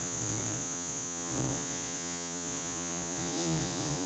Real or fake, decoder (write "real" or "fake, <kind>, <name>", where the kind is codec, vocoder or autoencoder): fake, vocoder, Vocos